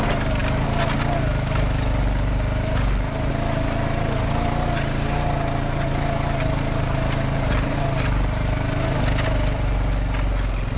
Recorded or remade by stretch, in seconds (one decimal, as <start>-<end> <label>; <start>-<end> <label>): 0.0-10.8 recorded